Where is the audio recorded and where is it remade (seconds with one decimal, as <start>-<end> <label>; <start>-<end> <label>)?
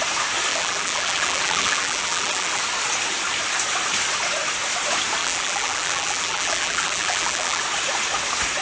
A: 0.0-0.5 recorded; 0.5-2.6 remade; 2.6-5.2 recorded; 5.2-7.6 remade; 7.6-8.6 recorded